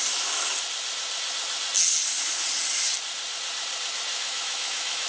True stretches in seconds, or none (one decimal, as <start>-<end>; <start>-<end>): 0.0-4.1